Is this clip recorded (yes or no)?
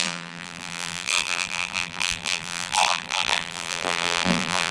no